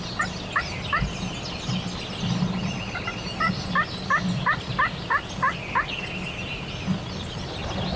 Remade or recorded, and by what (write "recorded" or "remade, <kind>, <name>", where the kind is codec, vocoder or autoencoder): recorded